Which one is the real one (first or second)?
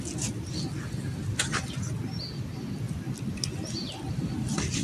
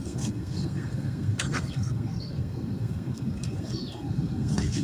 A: first